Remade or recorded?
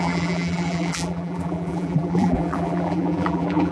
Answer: remade